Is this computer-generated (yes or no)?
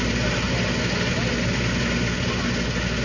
no